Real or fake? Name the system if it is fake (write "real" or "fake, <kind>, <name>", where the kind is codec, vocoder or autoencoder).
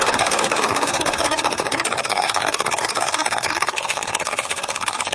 fake, codec, SNAC